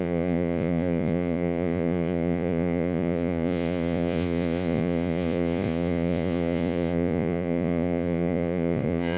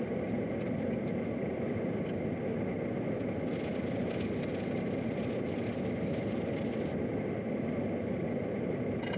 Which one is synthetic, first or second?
first